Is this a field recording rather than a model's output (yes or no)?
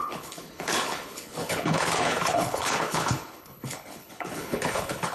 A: no